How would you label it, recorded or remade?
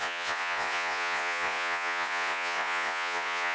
remade